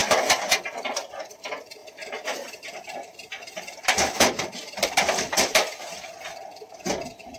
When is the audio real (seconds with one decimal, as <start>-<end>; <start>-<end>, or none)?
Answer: 0.9-1.8; 6.2-7.4